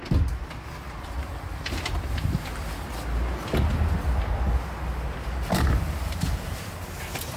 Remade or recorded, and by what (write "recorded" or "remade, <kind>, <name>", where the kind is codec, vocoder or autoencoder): recorded